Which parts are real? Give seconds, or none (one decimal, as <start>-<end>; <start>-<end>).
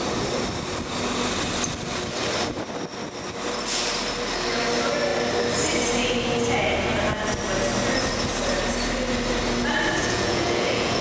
0.0-10.0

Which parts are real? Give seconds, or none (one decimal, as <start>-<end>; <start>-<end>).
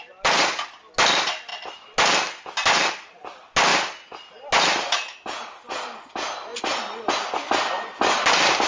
0.0-8.7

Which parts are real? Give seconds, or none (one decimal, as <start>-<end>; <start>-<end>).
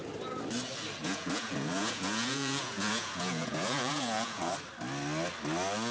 0.0-1.0; 4.5-5.9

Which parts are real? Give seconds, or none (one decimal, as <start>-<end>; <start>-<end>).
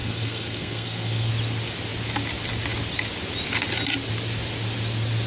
1.3-5.3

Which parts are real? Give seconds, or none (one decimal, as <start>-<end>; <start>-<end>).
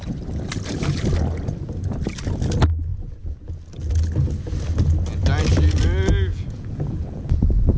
0.0-2.9; 3.5-6.3; 7.3-7.8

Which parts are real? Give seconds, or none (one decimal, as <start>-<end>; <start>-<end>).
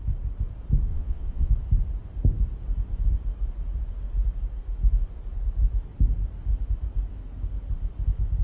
0.0-0.9; 1.5-8.4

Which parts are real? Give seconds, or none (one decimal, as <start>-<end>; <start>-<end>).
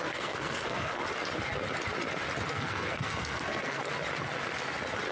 1.0-2.5; 3.8-5.1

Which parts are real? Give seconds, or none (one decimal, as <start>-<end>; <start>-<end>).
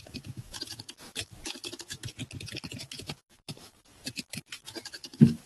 2.2-2.8